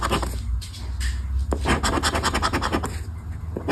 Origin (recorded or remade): recorded